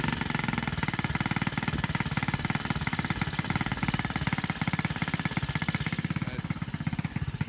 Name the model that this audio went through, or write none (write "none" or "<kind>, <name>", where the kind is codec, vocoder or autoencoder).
none